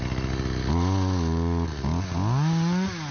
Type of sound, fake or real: real